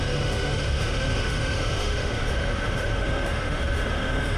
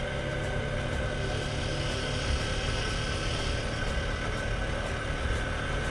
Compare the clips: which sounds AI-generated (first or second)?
first